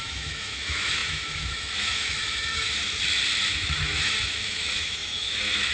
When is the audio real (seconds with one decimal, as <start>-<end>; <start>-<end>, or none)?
2.8-3.5